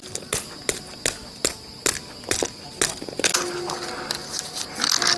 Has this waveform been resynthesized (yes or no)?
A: no